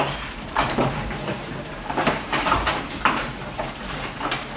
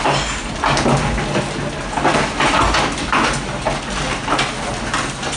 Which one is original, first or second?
second